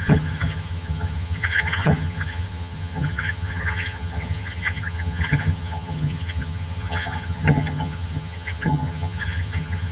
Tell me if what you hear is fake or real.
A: fake